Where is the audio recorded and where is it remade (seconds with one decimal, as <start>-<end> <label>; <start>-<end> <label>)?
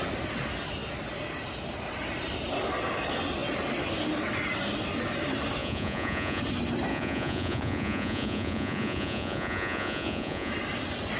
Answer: 0.0-5.6 recorded; 5.6-6.4 remade; 6.4-6.9 recorded; 6.9-10.5 remade; 10.5-11.2 recorded